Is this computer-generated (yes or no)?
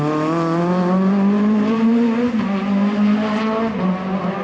no